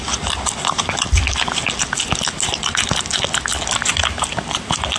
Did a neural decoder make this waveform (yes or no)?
no